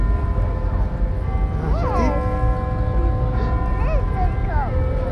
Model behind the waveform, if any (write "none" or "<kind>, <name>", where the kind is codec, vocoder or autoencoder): none